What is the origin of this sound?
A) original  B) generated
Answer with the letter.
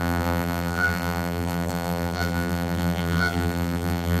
B